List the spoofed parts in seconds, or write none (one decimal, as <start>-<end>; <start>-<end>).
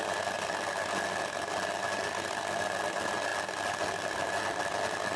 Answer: none